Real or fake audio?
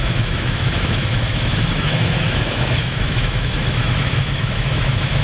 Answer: fake